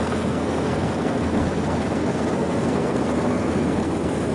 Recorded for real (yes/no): no